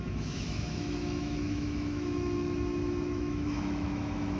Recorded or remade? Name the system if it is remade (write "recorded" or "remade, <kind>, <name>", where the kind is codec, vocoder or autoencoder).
remade, autoencoder, DAC-VAE